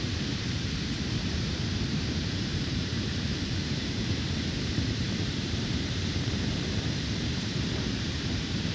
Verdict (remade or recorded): remade